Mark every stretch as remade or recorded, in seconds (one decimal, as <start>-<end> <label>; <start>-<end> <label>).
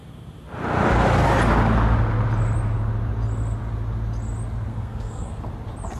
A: 0.0-4.7 recorded; 4.7-5.4 remade; 5.4-6.0 recorded